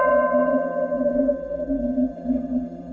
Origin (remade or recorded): remade